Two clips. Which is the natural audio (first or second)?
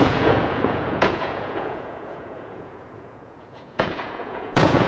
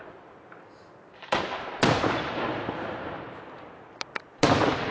second